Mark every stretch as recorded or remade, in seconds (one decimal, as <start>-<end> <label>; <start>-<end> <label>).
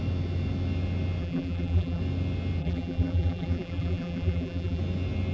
0.0-1.2 recorded; 1.2-2.0 remade; 2.0-2.6 recorded; 2.6-4.8 remade; 4.8-5.3 recorded